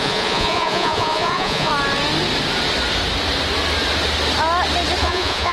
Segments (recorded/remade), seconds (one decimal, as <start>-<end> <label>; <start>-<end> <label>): 0.0-1.7 remade; 1.7-5.0 recorded; 5.0-5.5 remade